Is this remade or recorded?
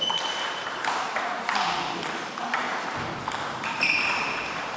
remade